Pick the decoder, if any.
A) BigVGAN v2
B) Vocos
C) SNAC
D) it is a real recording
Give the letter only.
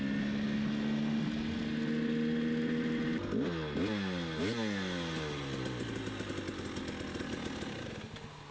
D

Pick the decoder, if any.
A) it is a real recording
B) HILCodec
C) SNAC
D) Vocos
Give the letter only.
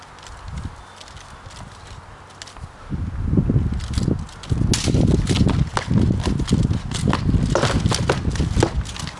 A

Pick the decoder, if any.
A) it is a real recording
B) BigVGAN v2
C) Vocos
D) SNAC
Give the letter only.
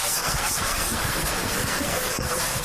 D